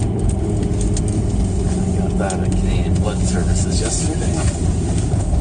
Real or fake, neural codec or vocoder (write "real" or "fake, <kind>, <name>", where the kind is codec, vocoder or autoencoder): real